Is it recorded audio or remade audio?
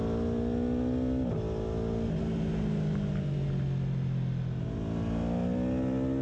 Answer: recorded